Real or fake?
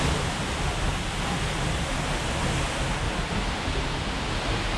real